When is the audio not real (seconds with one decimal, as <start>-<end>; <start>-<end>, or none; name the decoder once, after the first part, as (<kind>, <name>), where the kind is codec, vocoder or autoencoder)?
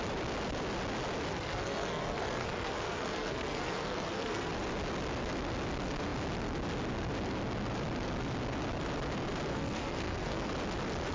1.3-4.5 (codec, SNAC); 9.5-10.5